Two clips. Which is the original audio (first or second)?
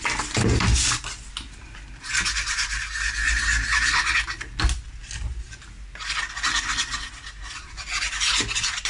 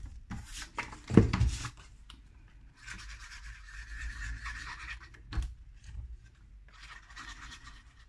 first